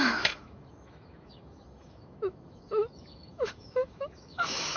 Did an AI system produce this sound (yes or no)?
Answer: yes